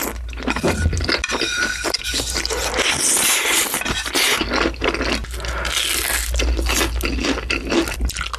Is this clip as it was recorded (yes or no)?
yes